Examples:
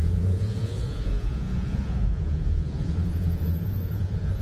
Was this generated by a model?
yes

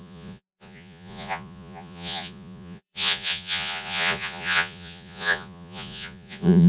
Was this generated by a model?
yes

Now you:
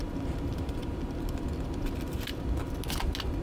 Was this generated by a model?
no